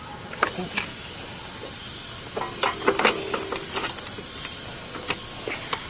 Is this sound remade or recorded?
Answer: recorded